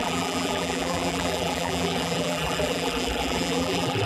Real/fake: fake